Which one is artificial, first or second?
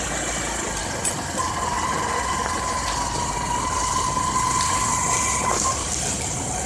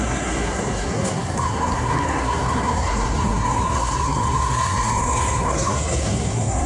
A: second